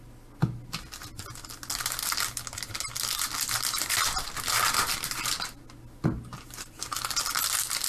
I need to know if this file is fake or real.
real